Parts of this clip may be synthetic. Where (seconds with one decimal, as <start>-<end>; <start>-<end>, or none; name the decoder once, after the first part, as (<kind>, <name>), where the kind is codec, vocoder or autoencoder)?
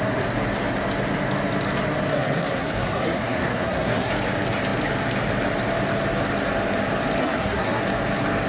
2.1-4.1 (codec, SNAC); 7.2-7.8